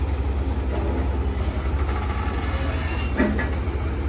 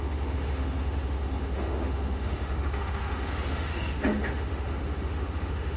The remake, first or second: second